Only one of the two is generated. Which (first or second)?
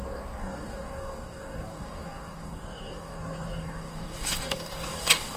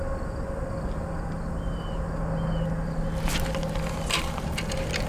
first